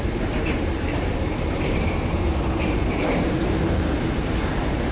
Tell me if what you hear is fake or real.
fake